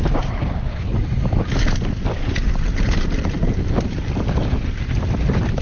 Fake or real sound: real